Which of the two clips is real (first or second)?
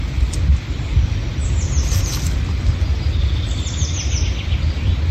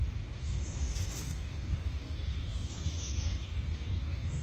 first